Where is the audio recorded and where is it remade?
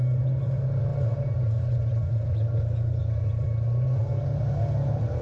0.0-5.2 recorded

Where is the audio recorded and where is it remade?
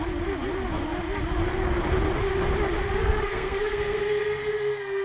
0.0-3.0 recorded; 3.0-4.4 remade; 4.4-5.0 recorded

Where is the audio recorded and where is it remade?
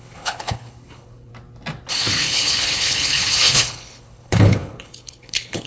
0.0-1.3 remade; 1.3-1.9 recorded; 1.9-5.7 remade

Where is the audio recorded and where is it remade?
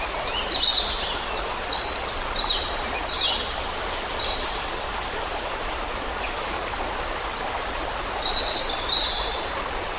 0.0-10.0 recorded